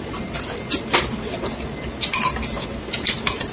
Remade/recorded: recorded